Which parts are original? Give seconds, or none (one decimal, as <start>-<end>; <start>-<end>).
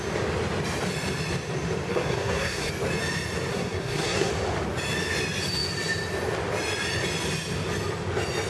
0.0-1.9; 2.7-3.5; 4.3-8.5